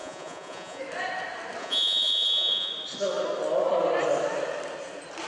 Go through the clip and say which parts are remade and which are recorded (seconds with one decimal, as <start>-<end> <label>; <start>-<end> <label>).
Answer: 0.0-0.8 remade; 0.8-1.6 recorded; 1.6-2.7 remade; 2.7-5.3 recorded